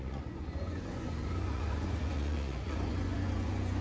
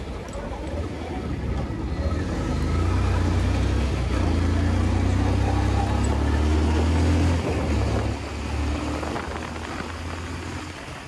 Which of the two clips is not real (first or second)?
first